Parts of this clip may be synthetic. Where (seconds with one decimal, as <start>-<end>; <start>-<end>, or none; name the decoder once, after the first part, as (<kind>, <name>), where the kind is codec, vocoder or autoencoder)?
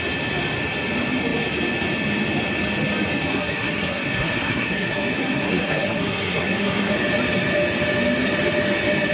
3.3-6.9 (codec, SNAC)